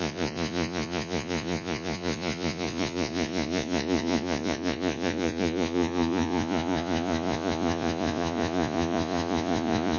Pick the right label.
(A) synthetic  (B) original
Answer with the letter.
A